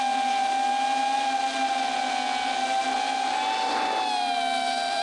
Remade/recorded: recorded